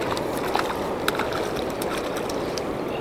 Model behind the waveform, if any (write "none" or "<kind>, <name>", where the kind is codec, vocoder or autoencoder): none